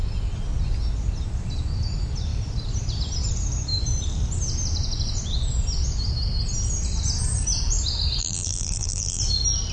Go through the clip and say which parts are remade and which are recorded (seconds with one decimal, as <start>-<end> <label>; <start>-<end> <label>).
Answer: 0.0-8.2 recorded; 8.2-9.2 remade; 9.2-9.7 recorded